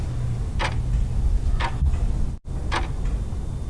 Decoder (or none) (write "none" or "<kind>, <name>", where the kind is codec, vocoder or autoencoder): none